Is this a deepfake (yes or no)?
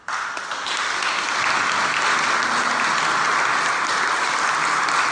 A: no